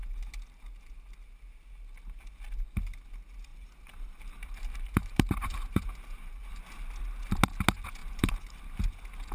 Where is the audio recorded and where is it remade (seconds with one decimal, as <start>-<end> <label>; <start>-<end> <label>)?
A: 0.0-3.5 recorded; 3.5-6.6 remade; 6.6-8.0 recorded; 8.0-8.8 remade; 8.8-9.3 recorded